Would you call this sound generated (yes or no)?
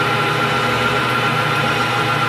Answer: yes